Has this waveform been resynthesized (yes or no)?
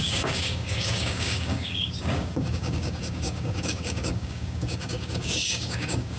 yes